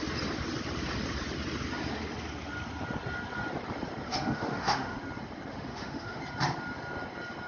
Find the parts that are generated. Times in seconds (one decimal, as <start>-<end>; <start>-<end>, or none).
4.1-5.0; 5.5-6.2